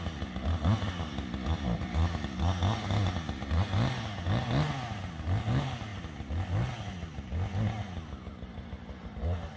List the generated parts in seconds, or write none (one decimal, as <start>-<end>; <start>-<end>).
none

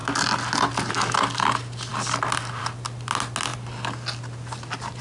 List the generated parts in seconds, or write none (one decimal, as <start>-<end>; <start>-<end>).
none

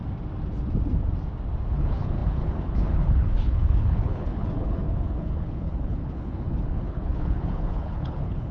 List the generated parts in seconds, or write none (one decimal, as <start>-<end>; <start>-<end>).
1.7-8.5

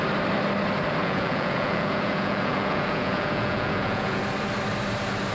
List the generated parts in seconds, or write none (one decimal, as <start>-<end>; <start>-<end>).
1.0-4.2

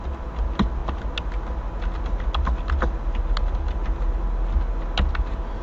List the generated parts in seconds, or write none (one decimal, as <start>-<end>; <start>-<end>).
none